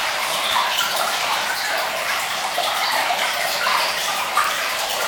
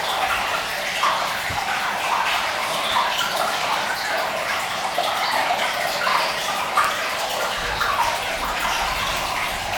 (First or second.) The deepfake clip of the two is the first